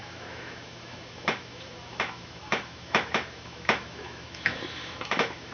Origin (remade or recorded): remade